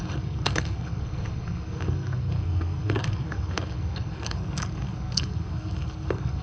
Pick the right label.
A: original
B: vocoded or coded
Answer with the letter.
B